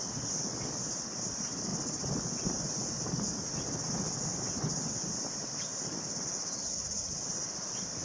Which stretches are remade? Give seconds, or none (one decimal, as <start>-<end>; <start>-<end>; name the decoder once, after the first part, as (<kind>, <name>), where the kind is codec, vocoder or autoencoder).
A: none